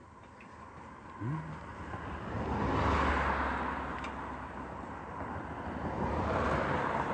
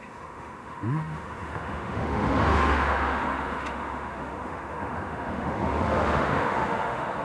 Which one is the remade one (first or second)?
second